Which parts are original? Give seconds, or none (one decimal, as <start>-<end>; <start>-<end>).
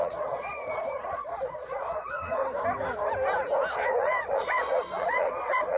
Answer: 2.4-3.7